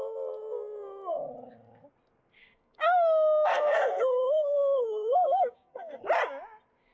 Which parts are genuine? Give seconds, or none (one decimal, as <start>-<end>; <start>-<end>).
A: 0.0-2.4; 6.0-6.9